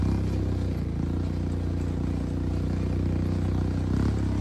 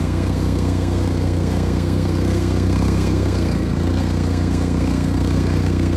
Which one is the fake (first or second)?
second